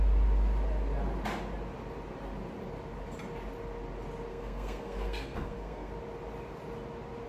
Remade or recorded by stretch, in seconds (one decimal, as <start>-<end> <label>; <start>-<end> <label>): 0.0-4.3 recorded; 4.3-5.9 remade; 5.9-7.3 recorded